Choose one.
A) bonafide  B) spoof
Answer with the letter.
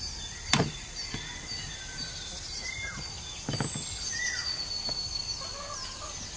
A